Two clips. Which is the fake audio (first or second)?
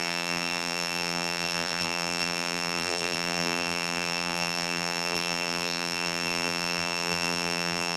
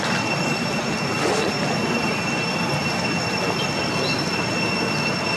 first